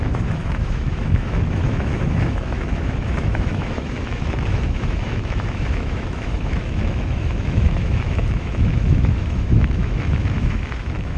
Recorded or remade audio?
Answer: remade